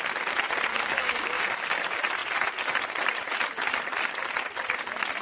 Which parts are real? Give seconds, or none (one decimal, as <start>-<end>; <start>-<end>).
0.0-0.7; 1.4-5.2